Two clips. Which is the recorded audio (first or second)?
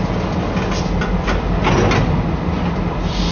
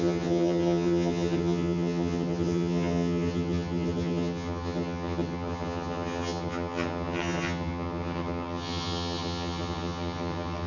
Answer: first